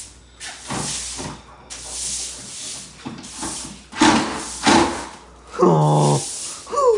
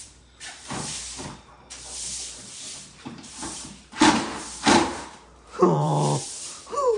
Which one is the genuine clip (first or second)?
first